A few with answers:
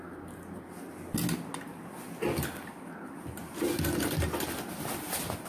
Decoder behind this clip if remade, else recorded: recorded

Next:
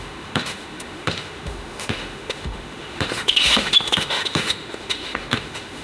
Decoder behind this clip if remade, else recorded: remade, autoencoder, DAC-VAE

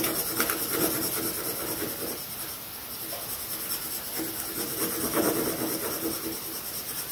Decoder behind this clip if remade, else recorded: recorded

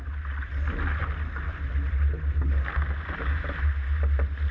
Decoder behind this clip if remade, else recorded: recorded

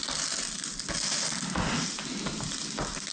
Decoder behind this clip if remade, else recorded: recorded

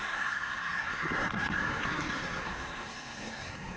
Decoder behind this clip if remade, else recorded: remade, codec, SNAC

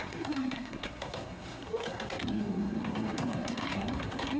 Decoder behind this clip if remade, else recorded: remade, codec, SNAC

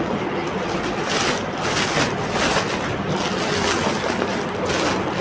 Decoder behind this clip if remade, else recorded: recorded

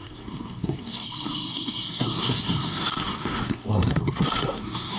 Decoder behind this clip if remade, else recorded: remade, codec, SNAC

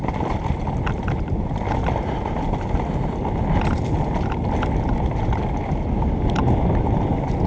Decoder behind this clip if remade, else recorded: recorded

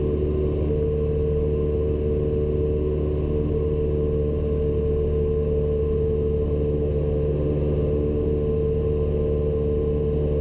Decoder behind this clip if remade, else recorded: recorded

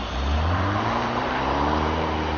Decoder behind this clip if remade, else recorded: remade, vocoder, BigVGAN v2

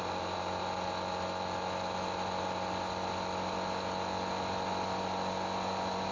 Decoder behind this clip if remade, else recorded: recorded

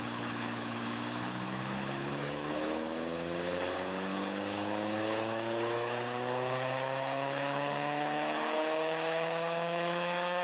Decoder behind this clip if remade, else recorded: remade, codec, HILCodec